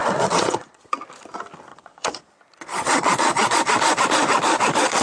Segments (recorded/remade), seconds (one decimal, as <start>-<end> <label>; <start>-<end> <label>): 0.0-0.9 remade; 0.9-1.7 recorded; 1.7-2.3 remade; 2.3-2.7 recorded; 2.7-3.6 remade; 3.6-5.0 recorded

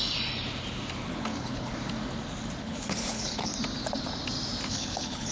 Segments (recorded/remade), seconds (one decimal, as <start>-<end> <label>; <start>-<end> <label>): 0.0-1.1 recorded; 1.1-1.7 remade; 1.7-2.6 recorded; 2.6-3.5 remade; 3.5-4.7 recorded; 4.7-5.3 remade

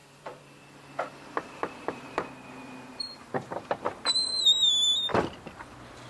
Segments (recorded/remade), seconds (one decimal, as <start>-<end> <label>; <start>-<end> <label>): 0.0-3.7 remade; 3.7-5.1 recorded; 5.1-5.6 remade; 5.6-6.1 recorded